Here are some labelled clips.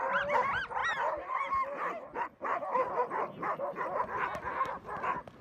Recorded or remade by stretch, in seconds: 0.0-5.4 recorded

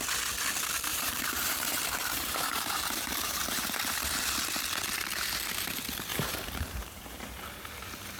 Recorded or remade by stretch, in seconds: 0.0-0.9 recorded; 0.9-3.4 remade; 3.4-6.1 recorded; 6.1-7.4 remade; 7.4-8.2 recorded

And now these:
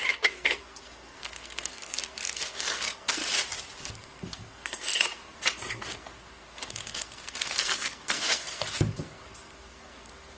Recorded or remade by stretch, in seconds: 0.0-3.2 remade; 3.2-3.8 recorded; 3.8-10.4 remade

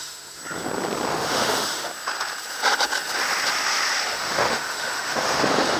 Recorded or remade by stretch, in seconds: 0.0-0.4 remade; 0.4-1.1 recorded; 1.1-1.9 remade; 1.9-4.1 recorded; 4.1-5.8 remade

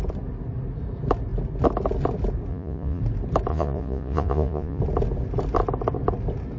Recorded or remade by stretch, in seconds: 0.0-2.5 recorded; 2.5-3.0 remade; 3.0-3.5 recorded; 3.5-4.8 remade; 4.8-6.6 recorded